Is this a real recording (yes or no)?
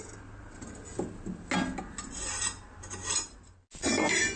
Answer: yes